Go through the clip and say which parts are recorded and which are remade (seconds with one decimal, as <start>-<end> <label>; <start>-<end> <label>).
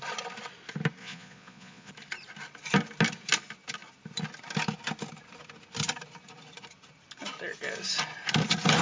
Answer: 0.0-1.0 recorded; 1.0-1.9 remade; 1.9-8.8 recorded